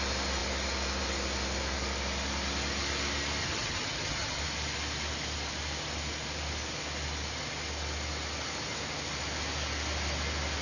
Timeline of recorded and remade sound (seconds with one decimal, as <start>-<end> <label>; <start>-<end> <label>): 0.0-3.4 recorded; 3.4-4.4 remade; 4.4-10.6 recorded